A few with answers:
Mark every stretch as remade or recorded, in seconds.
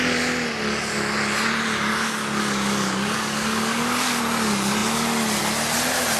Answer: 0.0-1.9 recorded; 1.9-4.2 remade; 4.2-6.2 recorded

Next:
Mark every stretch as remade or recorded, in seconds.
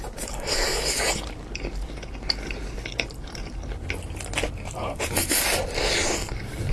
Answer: 0.0-0.7 remade; 0.7-4.5 recorded; 4.5-6.7 remade